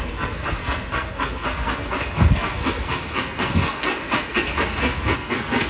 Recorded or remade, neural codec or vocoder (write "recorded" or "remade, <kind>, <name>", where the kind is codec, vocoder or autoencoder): remade, codec, SNAC